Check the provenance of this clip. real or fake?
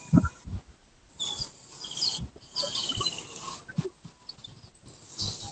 real